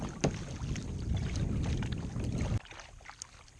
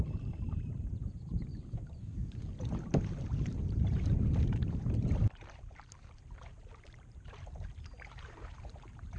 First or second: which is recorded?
first